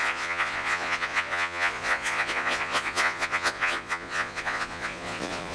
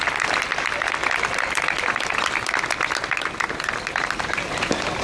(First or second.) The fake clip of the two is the first